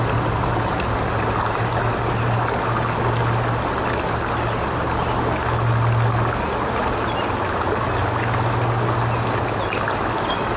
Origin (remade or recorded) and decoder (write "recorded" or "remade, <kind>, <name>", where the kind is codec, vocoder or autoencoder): recorded